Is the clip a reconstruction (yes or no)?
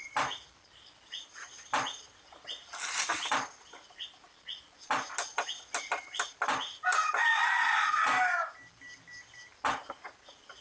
no